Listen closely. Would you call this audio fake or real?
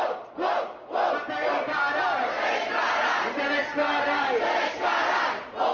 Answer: real